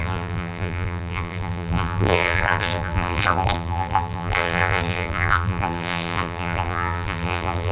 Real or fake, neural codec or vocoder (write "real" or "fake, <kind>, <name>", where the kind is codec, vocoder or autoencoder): fake, vocoder, BigVGAN v2